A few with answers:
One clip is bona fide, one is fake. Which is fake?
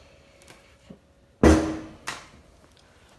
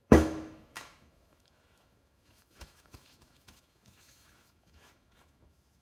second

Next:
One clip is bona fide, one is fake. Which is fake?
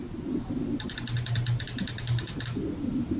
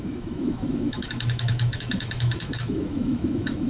second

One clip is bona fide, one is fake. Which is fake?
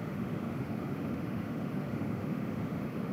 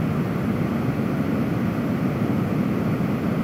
first